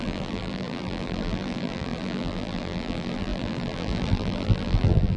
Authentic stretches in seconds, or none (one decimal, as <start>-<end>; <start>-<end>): none